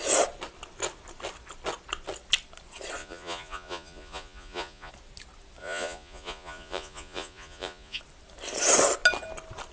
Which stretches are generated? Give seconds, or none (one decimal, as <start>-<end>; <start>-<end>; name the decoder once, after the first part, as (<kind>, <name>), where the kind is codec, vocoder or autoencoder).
3.0-4.9 (vocoder, Vocos); 5.6-8.0